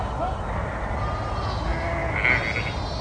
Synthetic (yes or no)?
no